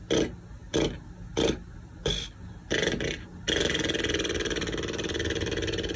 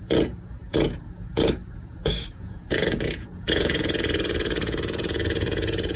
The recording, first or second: first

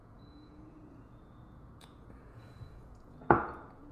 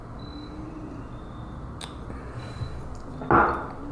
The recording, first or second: second